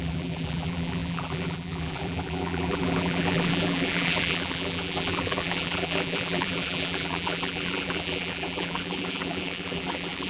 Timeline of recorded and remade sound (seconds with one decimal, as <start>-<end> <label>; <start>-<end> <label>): 0.0-10.3 remade